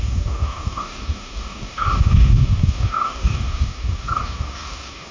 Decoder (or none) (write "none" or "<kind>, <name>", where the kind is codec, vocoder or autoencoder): codec, DAC